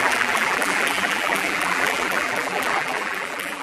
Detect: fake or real fake